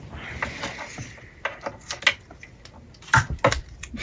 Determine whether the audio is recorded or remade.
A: recorded